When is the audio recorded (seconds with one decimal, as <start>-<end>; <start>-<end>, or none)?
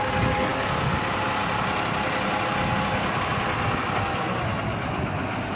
0.0-5.5